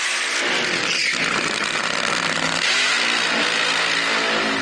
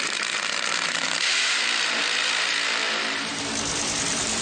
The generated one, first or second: second